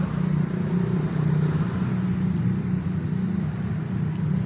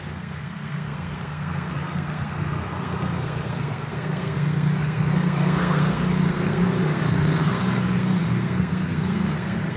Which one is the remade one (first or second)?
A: second